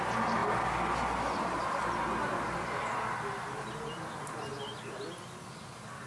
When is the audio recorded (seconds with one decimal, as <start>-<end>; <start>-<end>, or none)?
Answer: 0.0-6.1